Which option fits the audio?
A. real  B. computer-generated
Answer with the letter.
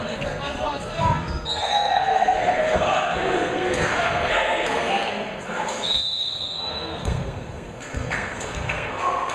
B